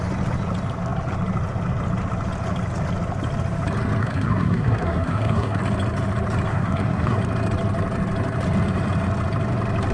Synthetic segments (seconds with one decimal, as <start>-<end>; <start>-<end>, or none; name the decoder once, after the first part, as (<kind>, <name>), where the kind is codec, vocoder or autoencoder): 4.0-5.6 (codec, SNAC); 6.5-7.2

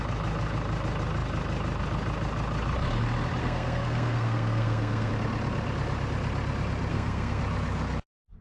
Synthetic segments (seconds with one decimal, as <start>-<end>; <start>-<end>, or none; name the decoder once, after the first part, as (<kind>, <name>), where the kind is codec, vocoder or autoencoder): 3.4-5.1 (codec, SNAC); 6.9-7.4

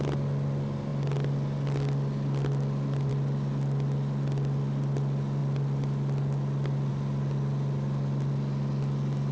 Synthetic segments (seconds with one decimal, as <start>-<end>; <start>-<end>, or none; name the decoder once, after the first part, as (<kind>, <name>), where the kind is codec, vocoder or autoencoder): none

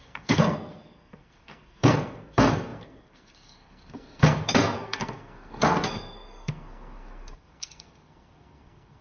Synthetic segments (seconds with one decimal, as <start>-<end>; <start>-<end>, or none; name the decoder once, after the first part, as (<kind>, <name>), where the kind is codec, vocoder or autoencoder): 0.0-9.0 (codec, SNAC)

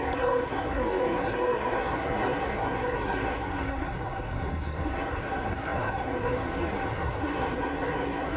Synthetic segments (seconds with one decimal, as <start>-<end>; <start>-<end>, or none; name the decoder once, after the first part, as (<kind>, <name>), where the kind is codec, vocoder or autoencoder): 0.0-8.4 (codec, SNAC)

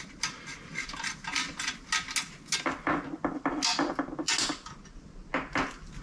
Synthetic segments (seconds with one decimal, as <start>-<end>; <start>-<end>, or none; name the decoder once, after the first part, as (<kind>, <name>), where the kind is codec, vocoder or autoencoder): none